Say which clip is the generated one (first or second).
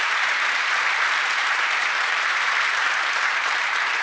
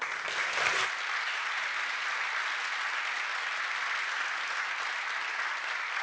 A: first